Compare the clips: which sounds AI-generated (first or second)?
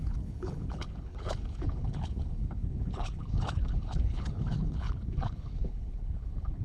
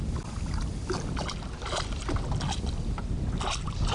first